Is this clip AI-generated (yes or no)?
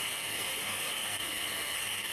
yes